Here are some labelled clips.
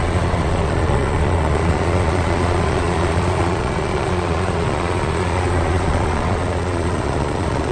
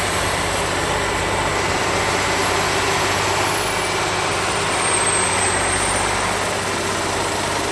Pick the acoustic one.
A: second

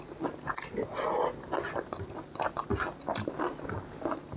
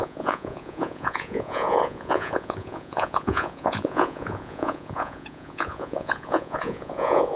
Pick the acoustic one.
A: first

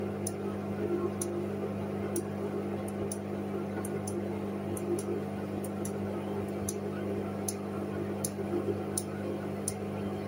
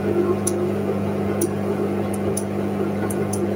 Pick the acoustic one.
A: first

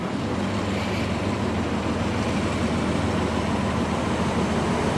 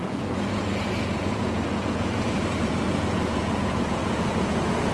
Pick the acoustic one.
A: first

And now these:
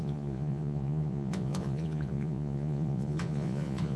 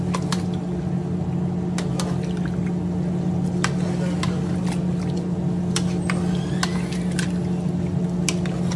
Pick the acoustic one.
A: second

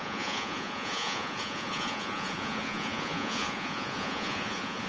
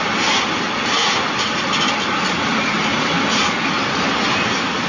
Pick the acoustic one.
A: second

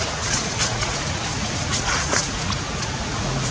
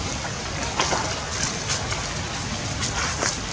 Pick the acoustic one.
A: second